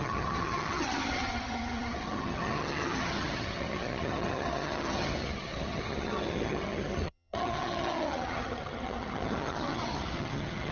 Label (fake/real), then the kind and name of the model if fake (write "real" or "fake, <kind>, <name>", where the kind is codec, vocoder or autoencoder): fake, vocoder, HiFi-GAN